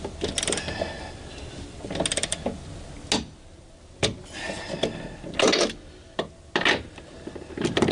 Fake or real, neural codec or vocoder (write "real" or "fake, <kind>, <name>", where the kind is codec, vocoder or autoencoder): real